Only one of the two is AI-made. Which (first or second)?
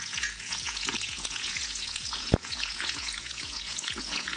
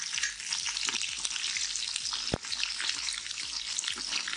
first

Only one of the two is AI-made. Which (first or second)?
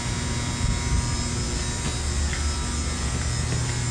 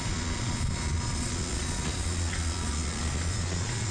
second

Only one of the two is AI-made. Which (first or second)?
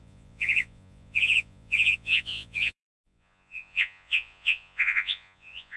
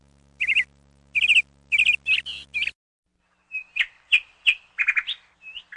first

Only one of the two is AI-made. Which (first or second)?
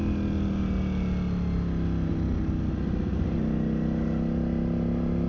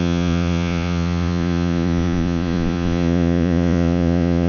second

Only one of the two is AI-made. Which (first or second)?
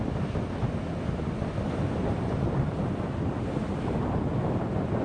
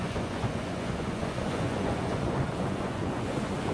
second